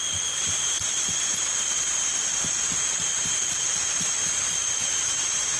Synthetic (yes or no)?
no